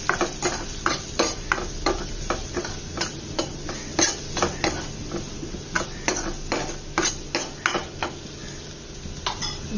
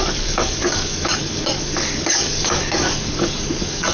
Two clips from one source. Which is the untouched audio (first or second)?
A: first